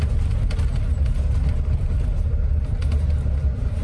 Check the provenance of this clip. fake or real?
real